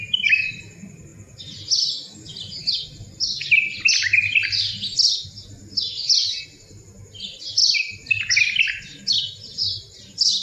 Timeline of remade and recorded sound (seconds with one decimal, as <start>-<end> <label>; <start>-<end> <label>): 0.0-10.4 recorded